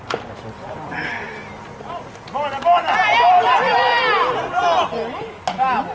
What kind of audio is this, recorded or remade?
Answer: recorded